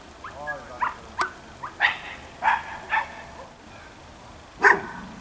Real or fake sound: real